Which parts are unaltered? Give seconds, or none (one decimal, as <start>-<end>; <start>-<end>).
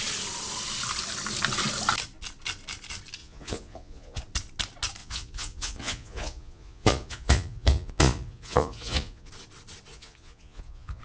0.0-3.2; 4.2-5.0; 9.3-9.9